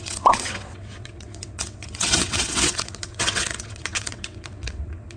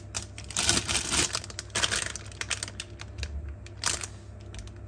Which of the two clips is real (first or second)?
second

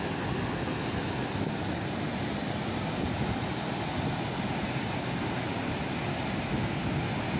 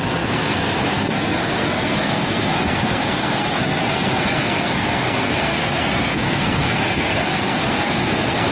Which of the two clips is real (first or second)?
first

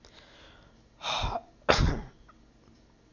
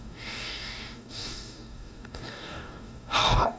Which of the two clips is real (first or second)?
first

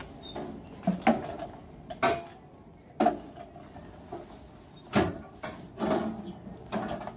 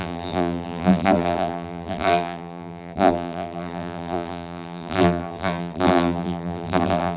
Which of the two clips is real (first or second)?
first